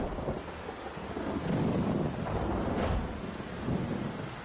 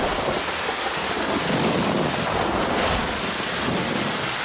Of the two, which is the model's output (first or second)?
second